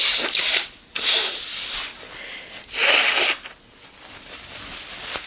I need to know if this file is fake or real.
real